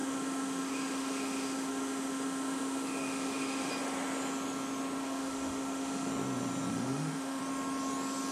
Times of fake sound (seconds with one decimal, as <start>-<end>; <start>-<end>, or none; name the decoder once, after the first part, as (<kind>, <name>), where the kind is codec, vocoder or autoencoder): 0.0-3.7 (autoencoder, DAC-VAE); 5.0-6.1; 6.7-7.4